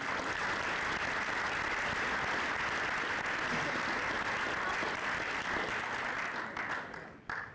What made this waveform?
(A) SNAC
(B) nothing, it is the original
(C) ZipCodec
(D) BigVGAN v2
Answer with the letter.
B